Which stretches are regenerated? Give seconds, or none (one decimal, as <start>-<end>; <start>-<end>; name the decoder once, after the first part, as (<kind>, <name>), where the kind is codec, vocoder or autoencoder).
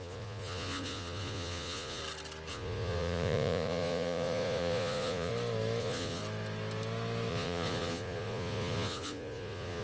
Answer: 0.0-2.0 (vocoder, Vocos); 2.5-5.3; 5.8-6.2; 7.3-9.8